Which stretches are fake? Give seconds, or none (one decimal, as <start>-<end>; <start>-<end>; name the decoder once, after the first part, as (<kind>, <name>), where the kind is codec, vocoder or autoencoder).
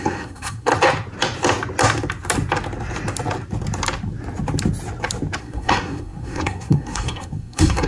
0.0-0.7 (codec, SNAC); 5.4-7.9